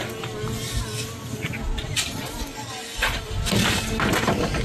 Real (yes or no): yes